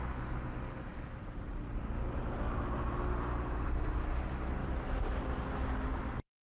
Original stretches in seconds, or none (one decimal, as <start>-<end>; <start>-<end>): 0.0-6.4